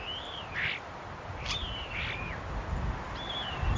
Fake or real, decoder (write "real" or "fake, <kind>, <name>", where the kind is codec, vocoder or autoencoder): real